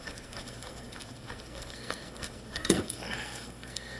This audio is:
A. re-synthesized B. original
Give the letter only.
A